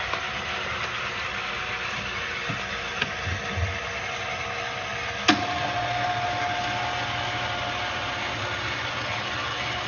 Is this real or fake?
real